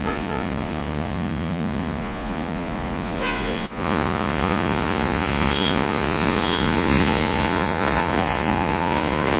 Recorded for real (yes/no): no